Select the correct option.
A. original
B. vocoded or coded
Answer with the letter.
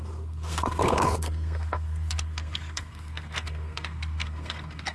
B